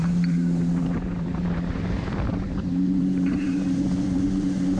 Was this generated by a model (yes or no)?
yes